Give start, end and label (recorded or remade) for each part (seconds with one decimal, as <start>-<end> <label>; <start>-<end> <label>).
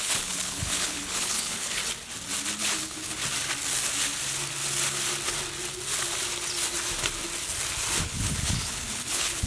0.0-1.8 remade; 1.8-2.6 recorded; 2.6-3.2 remade; 3.2-8.0 recorded; 8.0-9.5 remade